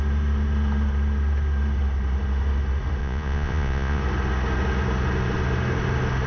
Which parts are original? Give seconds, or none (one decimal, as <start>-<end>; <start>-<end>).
0.0-3.0; 4.0-6.3